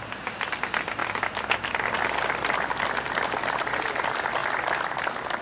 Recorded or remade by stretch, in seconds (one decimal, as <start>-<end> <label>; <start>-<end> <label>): 0.0-5.4 recorded

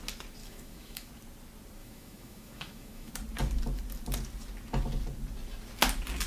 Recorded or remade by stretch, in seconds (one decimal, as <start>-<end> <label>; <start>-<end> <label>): 0.0-0.4 recorded; 0.4-1.1 remade; 1.1-1.8 recorded; 1.8-3.1 remade; 3.1-6.3 recorded